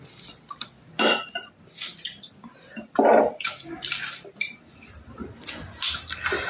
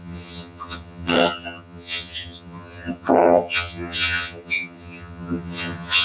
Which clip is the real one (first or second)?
first